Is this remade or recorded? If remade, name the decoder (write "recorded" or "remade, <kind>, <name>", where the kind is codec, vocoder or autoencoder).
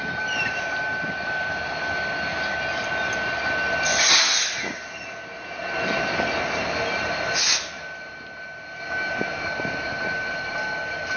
recorded